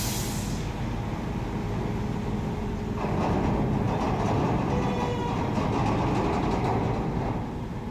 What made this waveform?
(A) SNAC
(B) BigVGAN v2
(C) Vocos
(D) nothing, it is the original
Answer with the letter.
D